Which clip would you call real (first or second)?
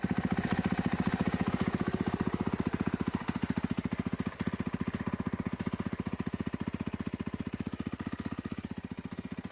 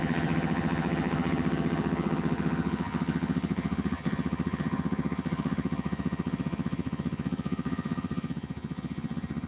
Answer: first